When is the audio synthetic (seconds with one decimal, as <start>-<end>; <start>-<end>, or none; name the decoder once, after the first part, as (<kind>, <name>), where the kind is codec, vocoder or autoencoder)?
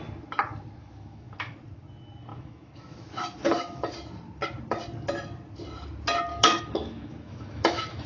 0.8-1.5 (autoencoder, DAC-VAE); 2.3-3.9; 6.3-8.1